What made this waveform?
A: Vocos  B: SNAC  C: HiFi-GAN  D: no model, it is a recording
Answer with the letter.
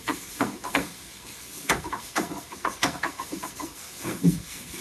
B